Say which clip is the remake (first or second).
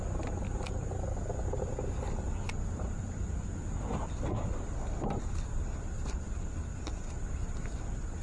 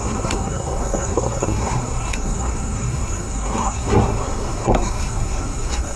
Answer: second